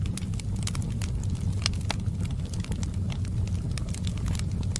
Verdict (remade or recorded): recorded